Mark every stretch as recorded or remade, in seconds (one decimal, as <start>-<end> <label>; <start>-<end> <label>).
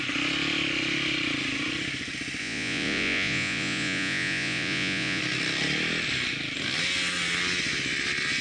0.0-2.4 recorded; 2.4-5.2 remade; 5.2-8.4 recorded